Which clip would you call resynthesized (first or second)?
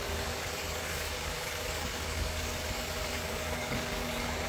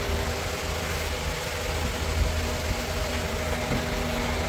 first